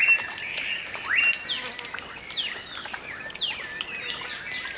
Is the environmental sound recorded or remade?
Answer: recorded